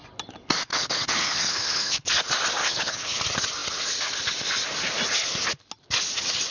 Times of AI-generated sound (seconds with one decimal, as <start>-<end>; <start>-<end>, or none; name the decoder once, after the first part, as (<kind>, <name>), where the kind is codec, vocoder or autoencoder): 0.7-2.1 (codec, HILCodec); 2.6-3.2

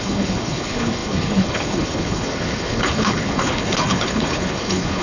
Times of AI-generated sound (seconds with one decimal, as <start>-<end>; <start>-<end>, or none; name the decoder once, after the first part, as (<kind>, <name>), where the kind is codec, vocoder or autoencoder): 0.0-5.0 (codec, HILCodec)

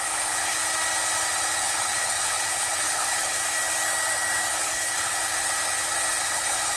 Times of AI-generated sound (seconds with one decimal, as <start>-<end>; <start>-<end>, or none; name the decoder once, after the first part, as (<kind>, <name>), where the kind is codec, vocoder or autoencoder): 0.0-0.6 (codec, HILCodec); 1.6-3.4; 4.5-5.1; 6.2-6.8

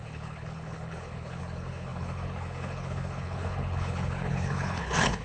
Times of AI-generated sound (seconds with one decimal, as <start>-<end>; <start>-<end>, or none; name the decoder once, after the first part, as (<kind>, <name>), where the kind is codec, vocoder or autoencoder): 0.0-5.2 (codec, HILCodec)

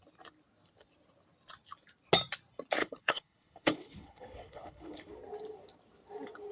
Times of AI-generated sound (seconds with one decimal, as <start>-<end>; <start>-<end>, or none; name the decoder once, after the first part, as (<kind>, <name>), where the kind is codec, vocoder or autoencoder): 2.8-5.1 (codec, HILCodec)

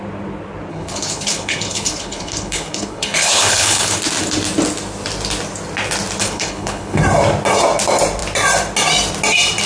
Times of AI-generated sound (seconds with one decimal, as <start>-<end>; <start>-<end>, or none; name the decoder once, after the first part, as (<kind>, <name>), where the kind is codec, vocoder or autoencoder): 0.7-4.0 (codec, HILCodec); 6.2-7.0

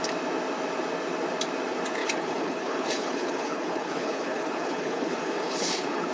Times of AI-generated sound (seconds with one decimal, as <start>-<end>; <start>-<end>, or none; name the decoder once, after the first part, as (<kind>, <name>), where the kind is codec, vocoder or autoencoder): 2.0-6.1 (codec, HILCodec)

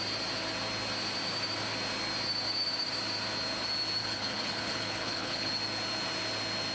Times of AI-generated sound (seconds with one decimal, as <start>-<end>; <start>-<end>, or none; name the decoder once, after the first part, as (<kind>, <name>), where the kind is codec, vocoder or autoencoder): 4.0-5.5 (codec, HILCodec)